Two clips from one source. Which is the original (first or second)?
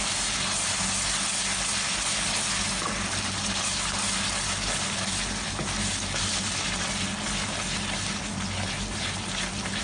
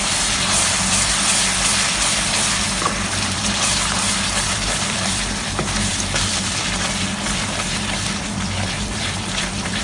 first